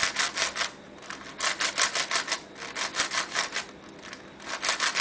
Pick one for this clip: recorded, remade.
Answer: recorded